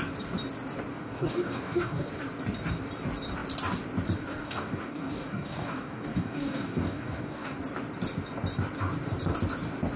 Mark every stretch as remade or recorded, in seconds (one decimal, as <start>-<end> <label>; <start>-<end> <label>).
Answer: 0.0-0.9 recorded; 0.9-2.1 remade; 2.1-4.3 recorded; 4.3-7.6 remade; 7.6-10.0 recorded